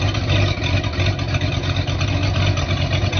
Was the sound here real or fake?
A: real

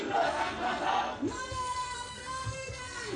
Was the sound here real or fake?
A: fake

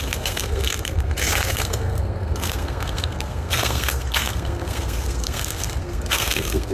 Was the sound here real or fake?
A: fake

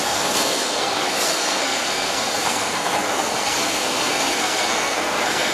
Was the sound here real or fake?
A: fake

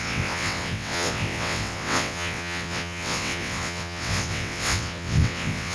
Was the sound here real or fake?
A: fake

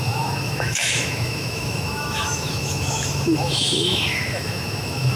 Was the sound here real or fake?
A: fake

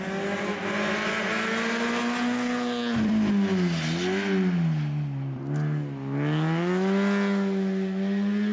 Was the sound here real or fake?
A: real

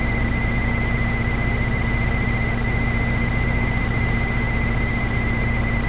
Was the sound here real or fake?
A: real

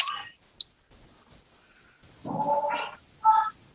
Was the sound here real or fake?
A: real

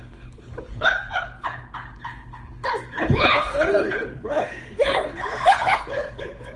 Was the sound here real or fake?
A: fake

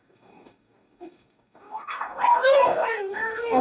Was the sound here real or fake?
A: fake